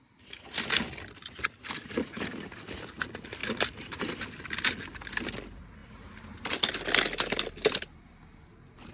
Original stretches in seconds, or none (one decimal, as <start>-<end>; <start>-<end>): 0.0-3.4; 4.0-5.8; 6.7-8.9